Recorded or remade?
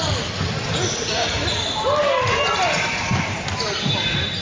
recorded